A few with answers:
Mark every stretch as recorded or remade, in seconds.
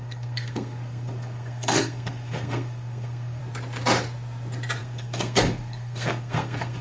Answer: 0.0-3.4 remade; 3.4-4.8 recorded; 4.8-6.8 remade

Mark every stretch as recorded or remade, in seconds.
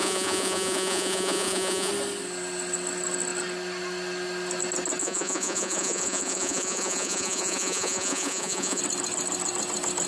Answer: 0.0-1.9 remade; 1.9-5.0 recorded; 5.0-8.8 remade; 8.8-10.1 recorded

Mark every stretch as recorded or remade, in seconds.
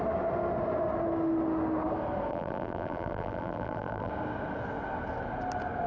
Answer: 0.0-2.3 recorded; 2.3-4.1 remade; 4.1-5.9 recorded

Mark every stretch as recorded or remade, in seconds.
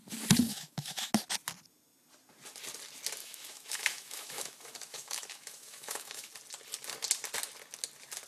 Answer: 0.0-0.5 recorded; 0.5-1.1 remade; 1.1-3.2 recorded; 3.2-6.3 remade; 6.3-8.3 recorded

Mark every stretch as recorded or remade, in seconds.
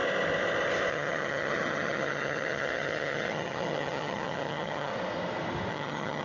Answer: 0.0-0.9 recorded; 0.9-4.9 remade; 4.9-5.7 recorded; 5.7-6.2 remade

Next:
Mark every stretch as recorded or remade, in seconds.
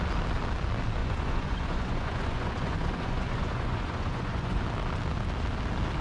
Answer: 0.0-1.0 recorded; 1.0-4.6 remade; 4.6-6.0 recorded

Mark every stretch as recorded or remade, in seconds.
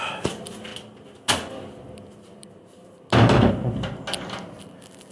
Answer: 0.0-5.1 recorded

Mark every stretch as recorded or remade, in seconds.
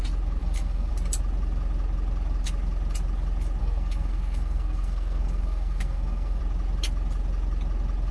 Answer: 0.0-0.4 recorded; 0.4-0.9 remade; 0.9-3.6 recorded; 3.6-6.4 remade; 6.4-8.1 recorded